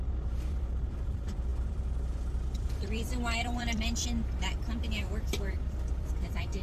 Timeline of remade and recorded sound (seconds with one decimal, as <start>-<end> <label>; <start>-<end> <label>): 0.0-6.6 remade